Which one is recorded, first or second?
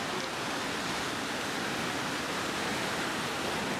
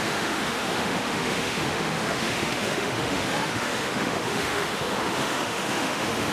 first